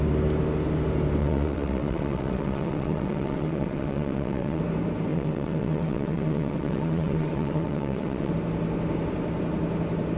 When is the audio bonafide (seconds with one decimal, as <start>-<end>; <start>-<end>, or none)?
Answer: 0.0-1.2; 4.6-5.1; 8.3-10.2